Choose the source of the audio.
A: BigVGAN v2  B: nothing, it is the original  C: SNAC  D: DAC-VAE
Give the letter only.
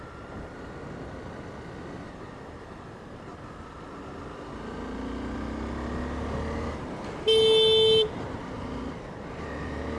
B